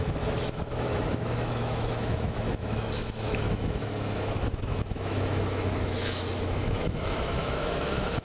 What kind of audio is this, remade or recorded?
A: remade